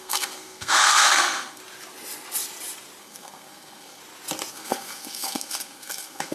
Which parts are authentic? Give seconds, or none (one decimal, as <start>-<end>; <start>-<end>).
1.6-3.0; 4.0-4.5